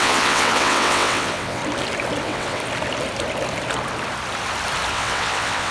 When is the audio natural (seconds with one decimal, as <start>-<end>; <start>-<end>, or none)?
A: 1.6-2.2; 2.6-4.9